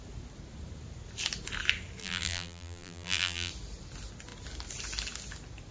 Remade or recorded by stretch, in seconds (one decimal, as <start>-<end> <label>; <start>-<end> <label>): 0.0-2.0 recorded; 2.0-3.5 remade; 3.5-5.7 recorded